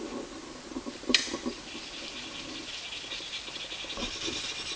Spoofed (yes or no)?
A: no